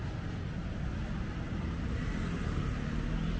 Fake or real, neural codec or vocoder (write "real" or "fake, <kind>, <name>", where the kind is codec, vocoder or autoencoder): real